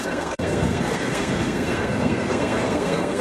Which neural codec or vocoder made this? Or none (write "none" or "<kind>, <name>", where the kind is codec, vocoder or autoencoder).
codec, SNAC